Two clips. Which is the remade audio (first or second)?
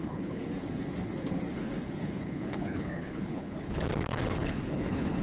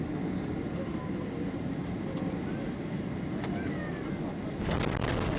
first